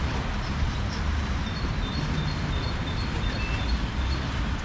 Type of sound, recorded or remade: recorded